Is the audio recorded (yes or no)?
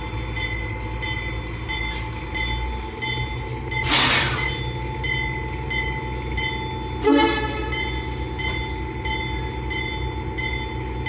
yes